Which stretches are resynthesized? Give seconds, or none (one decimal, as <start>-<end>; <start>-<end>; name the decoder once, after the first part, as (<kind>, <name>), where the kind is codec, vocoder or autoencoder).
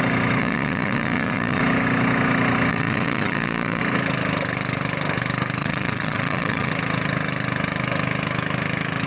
0.4-1.6 (vocoder, Vocos); 2.7-3.8; 5.6-6.7